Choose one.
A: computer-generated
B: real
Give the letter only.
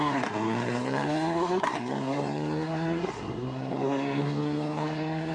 A